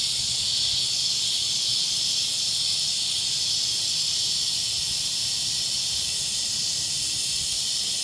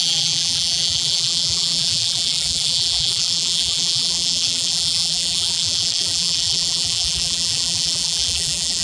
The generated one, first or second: second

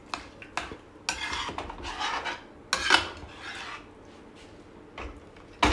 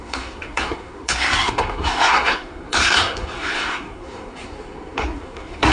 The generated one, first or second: second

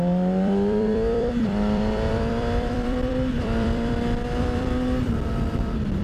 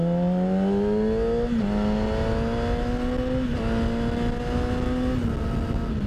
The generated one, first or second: first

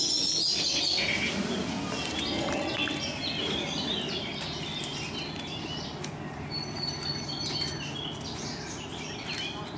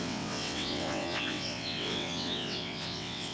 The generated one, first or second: second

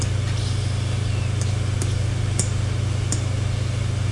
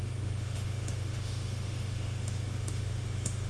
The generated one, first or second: second